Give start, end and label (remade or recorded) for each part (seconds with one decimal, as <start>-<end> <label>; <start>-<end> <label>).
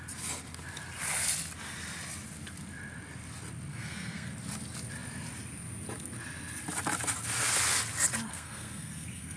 0.0-3.7 recorded; 3.7-4.3 remade; 4.3-8.3 recorded; 8.3-9.4 remade